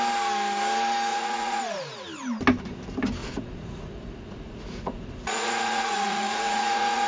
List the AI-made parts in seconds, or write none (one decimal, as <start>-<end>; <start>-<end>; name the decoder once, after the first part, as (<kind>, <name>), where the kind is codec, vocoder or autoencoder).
1.1-1.8 (vocoder, Vocos); 3.2-7.1